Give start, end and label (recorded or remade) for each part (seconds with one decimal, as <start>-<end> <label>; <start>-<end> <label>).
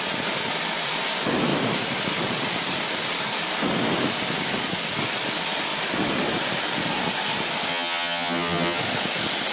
0.0-7.7 recorded; 7.7-8.8 remade; 8.8-9.5 recorded